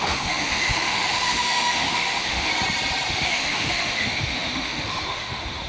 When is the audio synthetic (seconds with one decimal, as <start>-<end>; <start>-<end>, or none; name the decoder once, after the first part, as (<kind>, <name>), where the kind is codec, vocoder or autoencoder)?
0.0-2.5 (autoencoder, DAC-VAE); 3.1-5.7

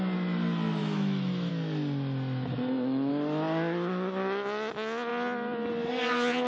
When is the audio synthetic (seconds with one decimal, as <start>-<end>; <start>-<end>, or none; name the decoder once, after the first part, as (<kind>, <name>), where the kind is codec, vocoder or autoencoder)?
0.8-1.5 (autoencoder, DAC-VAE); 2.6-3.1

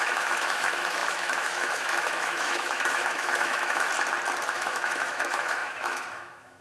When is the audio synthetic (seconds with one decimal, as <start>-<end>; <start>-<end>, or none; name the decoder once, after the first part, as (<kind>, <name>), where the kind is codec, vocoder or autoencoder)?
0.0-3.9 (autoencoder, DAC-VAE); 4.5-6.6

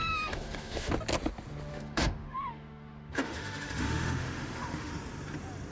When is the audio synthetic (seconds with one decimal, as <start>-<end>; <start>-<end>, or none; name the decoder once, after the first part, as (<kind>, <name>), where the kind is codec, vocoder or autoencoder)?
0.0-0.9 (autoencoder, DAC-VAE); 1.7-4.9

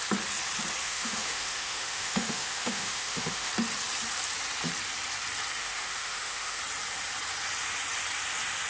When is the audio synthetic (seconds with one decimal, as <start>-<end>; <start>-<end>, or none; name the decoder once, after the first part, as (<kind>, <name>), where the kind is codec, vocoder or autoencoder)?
0.8-3.5 (autoencoder, DAC-VAE); 5.6-6.6

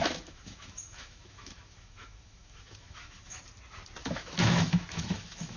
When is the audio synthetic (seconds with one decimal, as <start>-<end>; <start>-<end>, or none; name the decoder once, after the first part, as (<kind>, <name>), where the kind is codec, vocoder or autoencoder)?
0.0-3.4 (autoencoder, DAC-VAE); 4.0-5.6